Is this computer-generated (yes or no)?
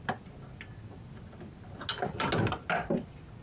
no